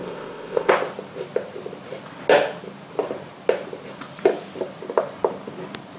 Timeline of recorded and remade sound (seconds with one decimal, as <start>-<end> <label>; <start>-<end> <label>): 0.0-0.7 remade; 0.7-6.0 recorded